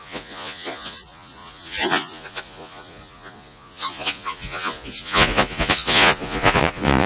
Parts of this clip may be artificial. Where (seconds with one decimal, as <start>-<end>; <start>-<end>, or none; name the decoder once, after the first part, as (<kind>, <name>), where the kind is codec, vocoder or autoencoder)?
0.0-7.1 (vocoder, Vocos)